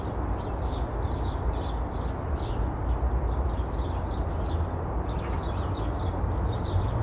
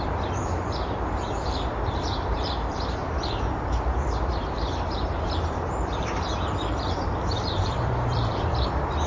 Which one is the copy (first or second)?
second